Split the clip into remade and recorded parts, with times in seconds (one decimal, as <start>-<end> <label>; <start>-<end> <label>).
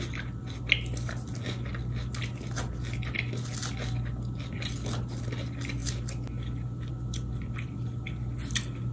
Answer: 0.0-8.9 recorded